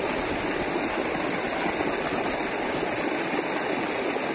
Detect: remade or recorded recorded